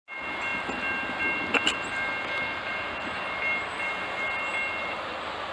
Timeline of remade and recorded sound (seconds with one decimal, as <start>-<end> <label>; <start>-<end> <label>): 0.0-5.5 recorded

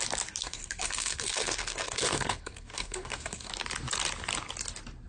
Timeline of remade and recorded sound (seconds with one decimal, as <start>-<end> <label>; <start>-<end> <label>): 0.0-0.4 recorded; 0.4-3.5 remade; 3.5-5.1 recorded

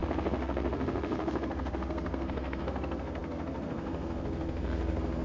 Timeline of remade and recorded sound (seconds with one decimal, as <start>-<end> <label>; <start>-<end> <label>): 0.0-5.2 remade

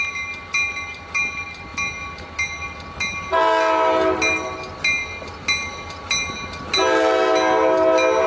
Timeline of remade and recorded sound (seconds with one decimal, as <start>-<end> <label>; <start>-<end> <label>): 0.0-8.3 recorded